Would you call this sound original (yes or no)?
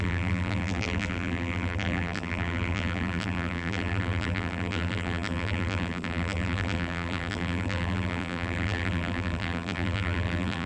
no